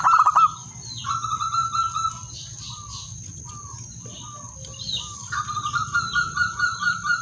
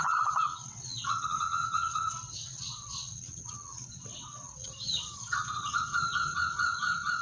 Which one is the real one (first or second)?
first